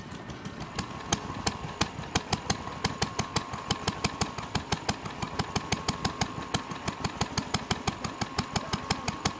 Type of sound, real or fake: real